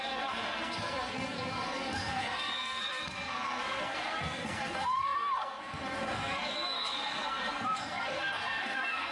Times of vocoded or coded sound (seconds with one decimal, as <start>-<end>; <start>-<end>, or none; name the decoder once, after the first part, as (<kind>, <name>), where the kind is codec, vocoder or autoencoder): 0.0-9.1 (codec, SNAC)